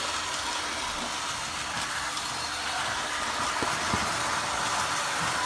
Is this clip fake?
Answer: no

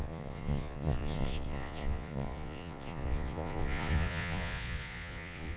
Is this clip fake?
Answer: yes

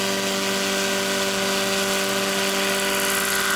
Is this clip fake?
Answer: no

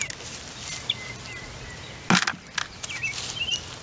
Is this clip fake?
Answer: no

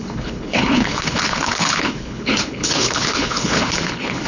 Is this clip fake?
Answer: yes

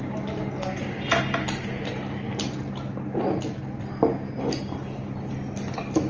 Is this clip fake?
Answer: no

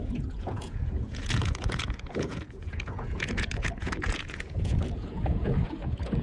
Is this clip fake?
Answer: yes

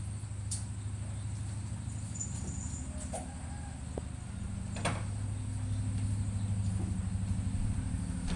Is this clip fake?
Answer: no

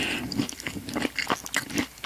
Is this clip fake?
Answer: no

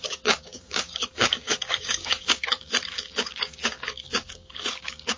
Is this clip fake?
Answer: yes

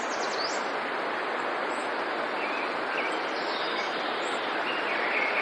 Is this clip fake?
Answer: no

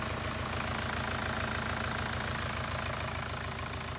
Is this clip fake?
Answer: no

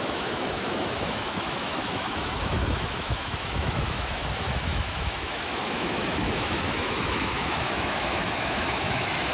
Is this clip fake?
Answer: yes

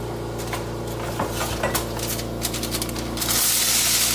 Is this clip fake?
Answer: no